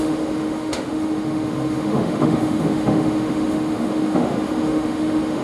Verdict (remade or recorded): remade